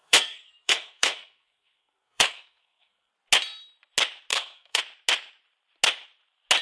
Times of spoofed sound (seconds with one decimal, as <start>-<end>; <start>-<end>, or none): 0.0-3.1; 4.3-4.8